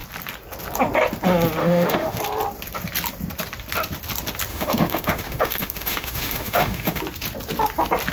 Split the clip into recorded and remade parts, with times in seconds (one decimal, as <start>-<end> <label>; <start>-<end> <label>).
0.0-1.6 recorded; 1.6-2.2 remade; 2.2-4.5 recorded; 4.5-7.0 remade; 7.0-8.1 recorded